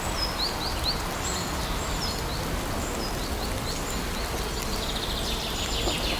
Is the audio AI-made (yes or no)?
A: no